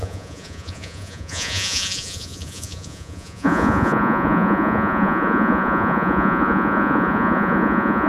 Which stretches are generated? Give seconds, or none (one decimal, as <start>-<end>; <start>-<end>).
0.0-8.1